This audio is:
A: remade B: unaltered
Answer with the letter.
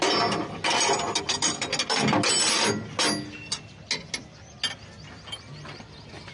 B